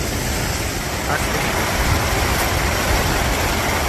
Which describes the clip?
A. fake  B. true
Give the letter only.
B